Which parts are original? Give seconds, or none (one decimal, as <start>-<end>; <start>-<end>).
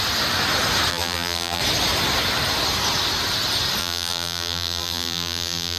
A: 0.0-0.9; 1.6-3.8